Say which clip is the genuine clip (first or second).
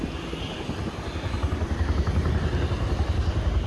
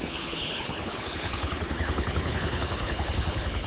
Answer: first